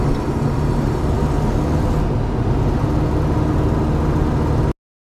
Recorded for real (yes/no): yes